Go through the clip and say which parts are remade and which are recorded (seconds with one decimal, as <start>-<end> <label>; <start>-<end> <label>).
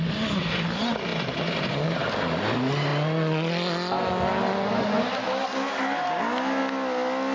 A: 0.0-7.3 recorded